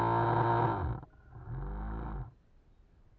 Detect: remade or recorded recorded